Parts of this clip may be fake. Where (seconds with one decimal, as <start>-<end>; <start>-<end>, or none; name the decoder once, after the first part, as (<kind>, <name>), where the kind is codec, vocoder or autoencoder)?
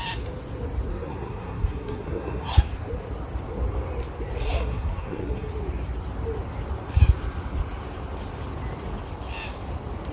0.9-2.6 (codec, SNAC); 4.4-5.5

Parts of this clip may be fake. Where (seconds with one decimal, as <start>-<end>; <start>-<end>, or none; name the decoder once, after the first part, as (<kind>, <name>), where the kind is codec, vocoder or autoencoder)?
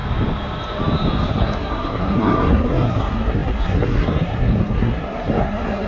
1.3-5.9 (codec, SNAC)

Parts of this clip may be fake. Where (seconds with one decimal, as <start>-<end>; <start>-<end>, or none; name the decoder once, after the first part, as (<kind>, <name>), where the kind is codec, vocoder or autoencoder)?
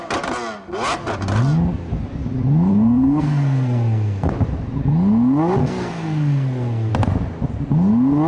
2.7-4.3 (codec, SNAC); 5.6-6.9